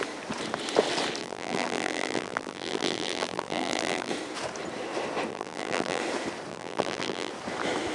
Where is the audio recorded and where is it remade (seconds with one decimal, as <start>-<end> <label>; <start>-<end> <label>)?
0.0-1.2 recorded; 1.2-4.1 remade; 4.1-5.3 recorded; 5.3-6.0 remade; 6.0-6.5 recorded; 6.5-7.3 remade; 7.3-7.9 recorded

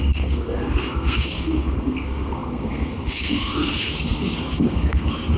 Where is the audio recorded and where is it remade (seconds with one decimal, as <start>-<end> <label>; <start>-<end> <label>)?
0.0-5.4 remade

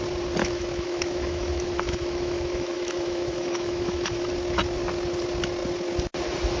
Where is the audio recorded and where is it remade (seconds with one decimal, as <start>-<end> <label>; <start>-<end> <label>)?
0.0-0.4 recorded; 0.4-4.3 remade; 4.3-6.6 recorded

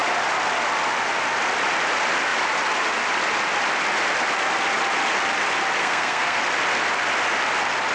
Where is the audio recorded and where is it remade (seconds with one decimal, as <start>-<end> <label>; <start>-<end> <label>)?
0.0-5.8 recorded; 5.8-6.4 remade; 6.4-7.9 recorded

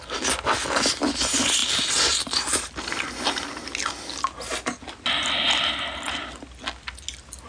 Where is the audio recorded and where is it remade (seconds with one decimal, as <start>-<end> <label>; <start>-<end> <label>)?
0.0-7.5 recorded

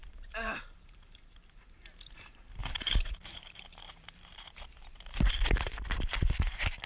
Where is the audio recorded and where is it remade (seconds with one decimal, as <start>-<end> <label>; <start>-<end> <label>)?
0.0-1.2 remade; 1.2-2.6 recorded; 2.6-5.2 remade; 5.2-6.9 recorded